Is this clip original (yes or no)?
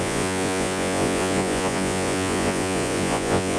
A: no